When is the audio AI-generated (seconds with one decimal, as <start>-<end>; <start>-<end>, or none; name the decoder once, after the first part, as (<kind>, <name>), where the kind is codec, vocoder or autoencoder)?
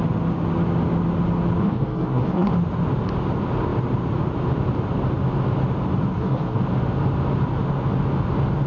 1.6-2.5 (codec, SNAC); 6.1-6.6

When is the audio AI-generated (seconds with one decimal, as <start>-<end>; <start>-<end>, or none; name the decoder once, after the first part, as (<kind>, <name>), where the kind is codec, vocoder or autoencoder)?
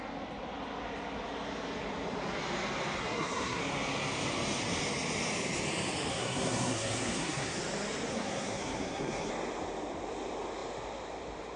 3.0-3.6 (codec, SNAC); 6.1-7.6; 8.1-9.3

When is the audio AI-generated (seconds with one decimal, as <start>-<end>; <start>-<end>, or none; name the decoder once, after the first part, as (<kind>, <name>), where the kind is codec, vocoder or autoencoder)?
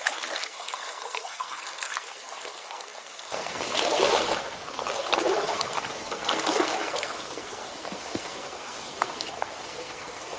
0.0-10.4 (codec, SNAC)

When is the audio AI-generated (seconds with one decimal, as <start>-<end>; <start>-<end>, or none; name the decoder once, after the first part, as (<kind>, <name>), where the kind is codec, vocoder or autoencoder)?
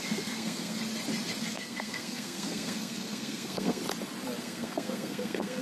0.0-0.8 (codec, SNAC); 1.4-3.8; 4.4-5.6